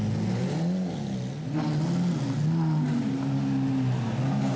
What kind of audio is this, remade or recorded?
recorded